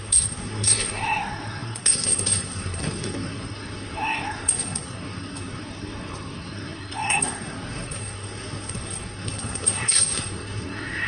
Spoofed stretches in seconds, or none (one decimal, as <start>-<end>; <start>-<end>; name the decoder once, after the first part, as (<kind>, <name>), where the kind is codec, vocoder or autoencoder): 0.0-11.1 (codec, SNAC)